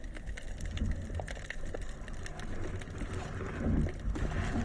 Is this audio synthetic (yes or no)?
no